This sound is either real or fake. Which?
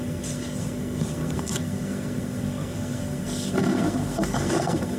fake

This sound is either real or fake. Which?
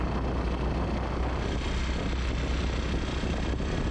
real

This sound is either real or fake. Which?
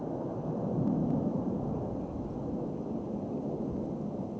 real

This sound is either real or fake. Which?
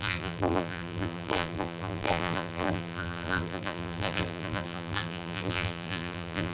fake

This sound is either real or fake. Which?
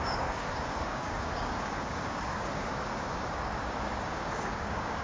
fake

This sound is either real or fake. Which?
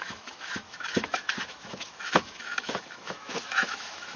fake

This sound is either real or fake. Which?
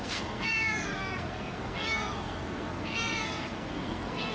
fake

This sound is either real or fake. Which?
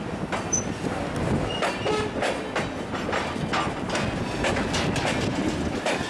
real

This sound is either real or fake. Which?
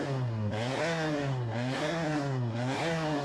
fake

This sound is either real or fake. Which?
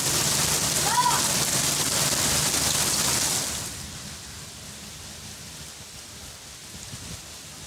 real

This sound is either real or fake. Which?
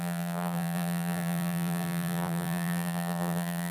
fake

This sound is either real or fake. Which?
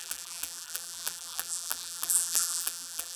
fake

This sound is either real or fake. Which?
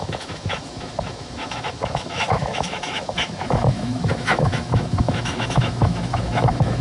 fake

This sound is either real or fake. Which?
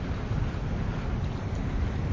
real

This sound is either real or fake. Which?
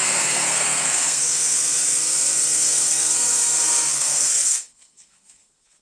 fake